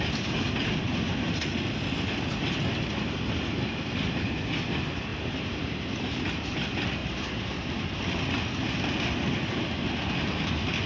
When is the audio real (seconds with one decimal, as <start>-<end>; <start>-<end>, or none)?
0.0-5.1; 6.4-7.0; 7.8-10.9